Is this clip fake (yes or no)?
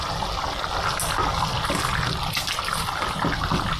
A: no